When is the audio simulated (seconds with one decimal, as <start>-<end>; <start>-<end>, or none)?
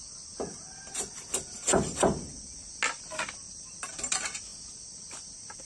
none